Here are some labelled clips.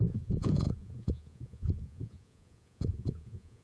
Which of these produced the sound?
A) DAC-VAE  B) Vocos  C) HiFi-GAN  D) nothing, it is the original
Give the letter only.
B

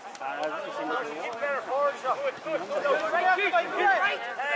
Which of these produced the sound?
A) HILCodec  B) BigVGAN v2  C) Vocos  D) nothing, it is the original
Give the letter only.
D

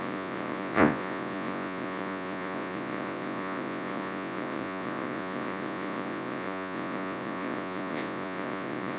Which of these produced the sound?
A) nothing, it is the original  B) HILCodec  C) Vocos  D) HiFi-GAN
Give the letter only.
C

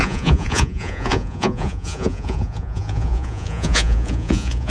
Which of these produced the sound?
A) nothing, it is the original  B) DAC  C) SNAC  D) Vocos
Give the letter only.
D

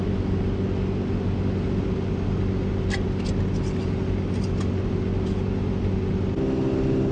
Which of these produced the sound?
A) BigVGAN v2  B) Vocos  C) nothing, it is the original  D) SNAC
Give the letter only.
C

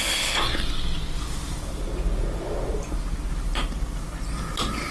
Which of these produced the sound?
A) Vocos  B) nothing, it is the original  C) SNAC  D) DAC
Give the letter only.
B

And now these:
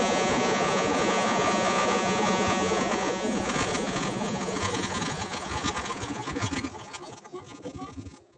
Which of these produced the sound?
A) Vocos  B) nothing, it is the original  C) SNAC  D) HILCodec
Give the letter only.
A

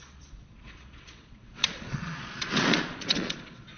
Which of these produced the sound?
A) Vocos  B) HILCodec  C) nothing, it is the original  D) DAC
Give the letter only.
A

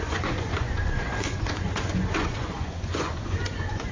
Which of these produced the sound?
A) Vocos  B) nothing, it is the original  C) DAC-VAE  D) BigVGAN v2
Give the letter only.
A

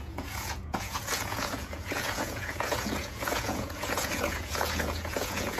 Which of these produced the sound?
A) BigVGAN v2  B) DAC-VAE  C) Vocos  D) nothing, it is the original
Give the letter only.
C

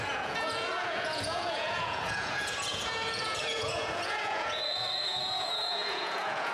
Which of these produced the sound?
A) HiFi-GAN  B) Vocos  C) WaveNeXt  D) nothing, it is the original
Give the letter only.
B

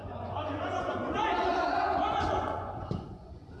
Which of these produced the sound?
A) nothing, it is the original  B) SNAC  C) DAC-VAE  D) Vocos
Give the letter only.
D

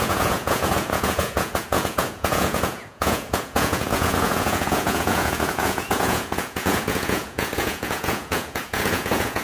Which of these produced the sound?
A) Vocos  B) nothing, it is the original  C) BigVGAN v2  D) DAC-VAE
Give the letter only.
A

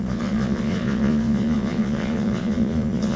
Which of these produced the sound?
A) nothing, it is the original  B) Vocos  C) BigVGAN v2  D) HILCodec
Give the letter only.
B